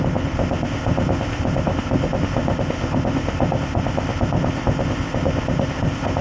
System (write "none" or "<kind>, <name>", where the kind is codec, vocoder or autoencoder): codec, ZipCodec